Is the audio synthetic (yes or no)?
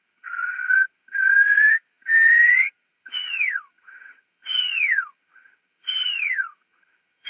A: yes